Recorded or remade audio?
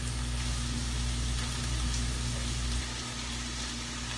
recorded